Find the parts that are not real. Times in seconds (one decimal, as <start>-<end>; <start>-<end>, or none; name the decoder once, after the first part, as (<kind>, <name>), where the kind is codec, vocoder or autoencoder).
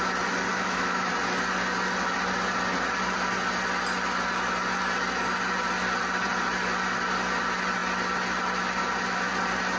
0.5-1.1 (autoencoder, DAC-VAE)